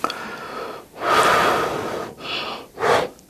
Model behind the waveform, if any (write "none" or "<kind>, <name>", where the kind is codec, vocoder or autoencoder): none